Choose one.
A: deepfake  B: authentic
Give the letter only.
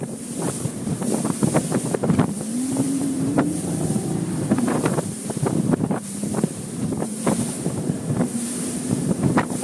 A